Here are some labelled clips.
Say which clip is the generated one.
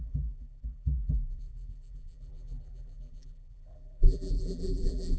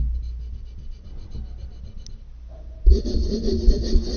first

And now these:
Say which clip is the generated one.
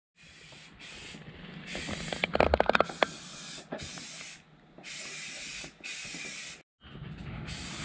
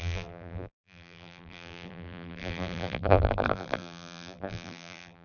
second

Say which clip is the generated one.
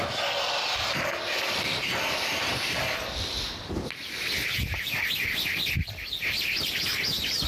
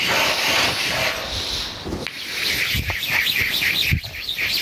second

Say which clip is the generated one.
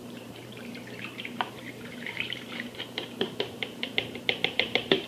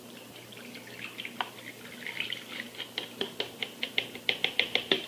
first